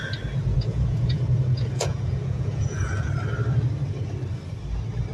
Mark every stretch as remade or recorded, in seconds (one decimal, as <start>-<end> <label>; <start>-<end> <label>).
0.0-0.4 recorded; 0.4-3.1 remade; 3.1-5.1 recorded